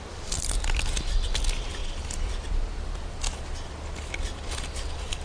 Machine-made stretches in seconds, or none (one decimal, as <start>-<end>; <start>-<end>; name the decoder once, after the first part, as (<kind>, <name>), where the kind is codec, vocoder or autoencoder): none